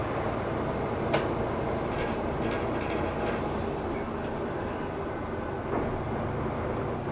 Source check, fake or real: real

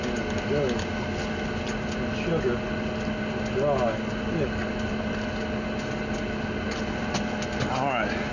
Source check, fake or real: real